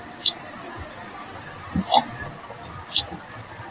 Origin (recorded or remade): recorded